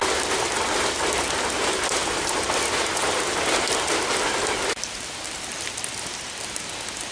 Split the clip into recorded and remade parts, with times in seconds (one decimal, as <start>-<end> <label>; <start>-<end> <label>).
0.0-7.1 recorded